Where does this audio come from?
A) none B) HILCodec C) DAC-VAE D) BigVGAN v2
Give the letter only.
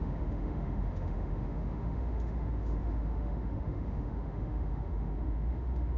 C